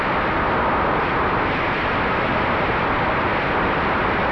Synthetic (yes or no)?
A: no